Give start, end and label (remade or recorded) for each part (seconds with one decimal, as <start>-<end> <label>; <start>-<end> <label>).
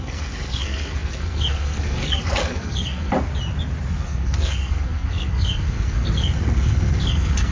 0.0-3.1 remade; 3.1-3.9 recorded; 3.9-7.5 remade